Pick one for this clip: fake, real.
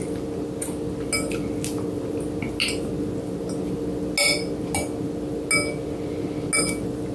real